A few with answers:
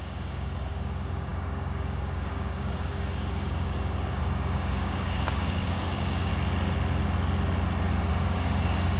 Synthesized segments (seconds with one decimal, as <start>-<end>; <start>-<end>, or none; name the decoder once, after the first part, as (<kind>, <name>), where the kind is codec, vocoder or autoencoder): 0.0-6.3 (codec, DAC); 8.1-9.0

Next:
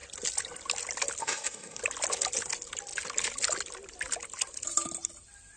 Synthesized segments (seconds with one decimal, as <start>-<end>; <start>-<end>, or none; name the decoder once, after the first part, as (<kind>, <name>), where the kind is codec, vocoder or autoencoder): 1.2-1.8 (codec, DAC)

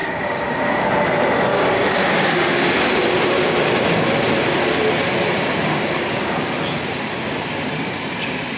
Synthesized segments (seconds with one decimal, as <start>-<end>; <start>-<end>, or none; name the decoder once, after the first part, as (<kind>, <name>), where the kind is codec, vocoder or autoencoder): 0.0-0.9 (codec, DAC); 1.5-2.8; 5.6-6.4

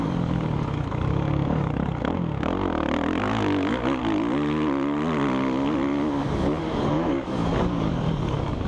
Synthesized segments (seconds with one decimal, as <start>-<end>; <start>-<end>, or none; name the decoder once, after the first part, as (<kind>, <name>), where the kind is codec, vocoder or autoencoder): 0.0-2.5 (codec, DAC); 3.2-4.0; 6.6-8.7

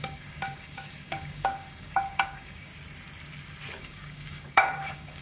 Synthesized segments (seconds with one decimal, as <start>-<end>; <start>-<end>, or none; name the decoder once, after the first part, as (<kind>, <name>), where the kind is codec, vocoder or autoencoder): 0.0-2.7 (codec, DAC); 3.8-5.2

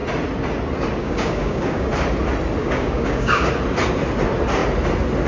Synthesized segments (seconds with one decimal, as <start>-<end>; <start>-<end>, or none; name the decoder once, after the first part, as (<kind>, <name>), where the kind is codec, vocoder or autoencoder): 1.0-1.9 (codec, DAC); 2.6-3.5